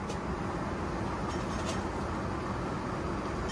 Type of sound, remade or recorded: recorded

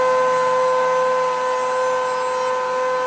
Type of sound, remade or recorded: recorded